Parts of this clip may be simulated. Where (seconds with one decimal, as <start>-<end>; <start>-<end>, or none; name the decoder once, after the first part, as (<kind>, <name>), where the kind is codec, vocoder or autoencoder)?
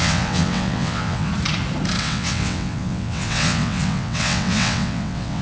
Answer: 0.0-1.3 (vocoder, WaveNeXt); 2.0-5.4